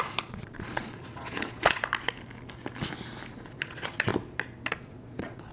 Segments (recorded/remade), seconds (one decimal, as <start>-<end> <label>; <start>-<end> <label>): 0.0-1.8 remade; 1.8-3.3 recorded; 3.3-4.1 remade; 4.1-4.7 recorded; 4.7-5.5 remade